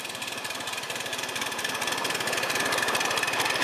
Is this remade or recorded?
remade